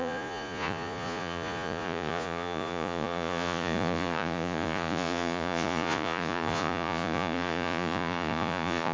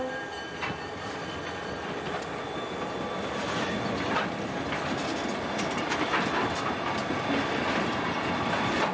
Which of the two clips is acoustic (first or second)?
second